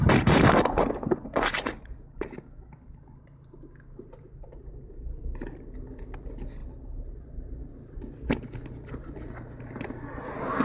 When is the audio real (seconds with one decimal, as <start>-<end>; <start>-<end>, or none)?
0.0-10.6